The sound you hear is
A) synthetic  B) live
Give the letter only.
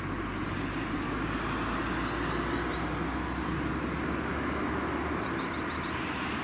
B